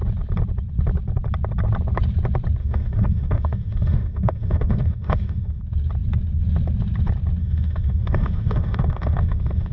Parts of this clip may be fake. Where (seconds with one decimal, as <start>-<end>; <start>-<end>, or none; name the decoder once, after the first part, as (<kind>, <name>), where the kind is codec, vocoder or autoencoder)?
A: 2.6-5.6 (autoencoder, DAC-VAE); 7.4-9.7